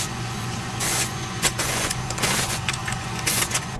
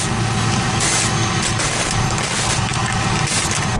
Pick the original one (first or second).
second